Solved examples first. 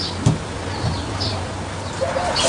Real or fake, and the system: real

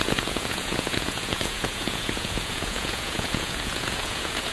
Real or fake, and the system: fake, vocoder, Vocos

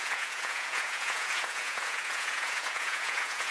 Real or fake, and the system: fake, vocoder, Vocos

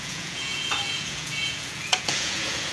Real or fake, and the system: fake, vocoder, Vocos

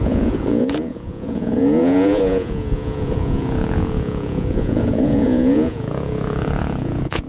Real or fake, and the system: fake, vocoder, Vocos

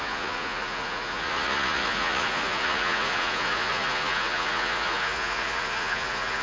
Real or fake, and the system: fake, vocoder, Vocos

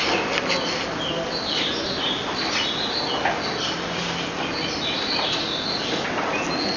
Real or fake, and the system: real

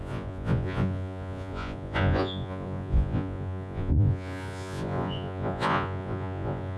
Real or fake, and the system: fake, vocoder, Vocos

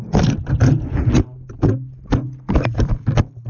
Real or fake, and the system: real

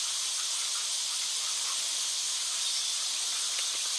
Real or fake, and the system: real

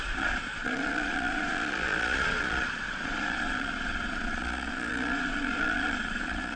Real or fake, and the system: fake, vocoder, Vocos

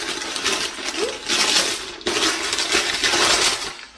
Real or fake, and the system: real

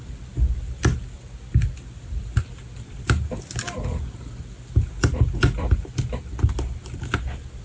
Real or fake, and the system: real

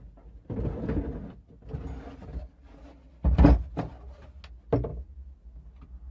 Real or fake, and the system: real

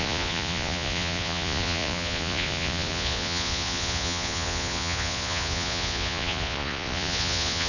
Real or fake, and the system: fake, vocoder, Vocos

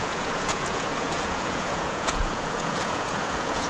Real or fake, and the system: fake, vocoder, Vocos